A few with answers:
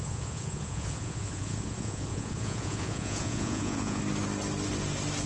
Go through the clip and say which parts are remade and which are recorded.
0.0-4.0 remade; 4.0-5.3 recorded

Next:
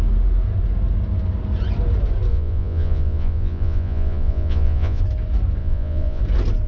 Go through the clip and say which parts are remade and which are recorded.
0.0-2.3 recorded; 2.3-5.0 remade; 5.0-5.6 recorded; 5.6-6.2 remade; 6.2-6.7 recorded

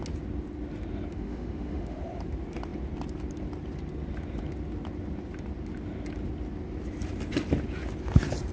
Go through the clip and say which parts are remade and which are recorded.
0.0-1.1 recorded; 1.1-2.0 remade; 2.0-8.5 recorded